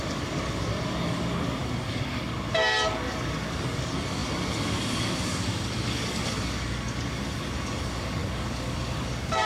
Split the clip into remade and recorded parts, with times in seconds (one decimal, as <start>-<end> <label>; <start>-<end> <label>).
0.0-9.4 remade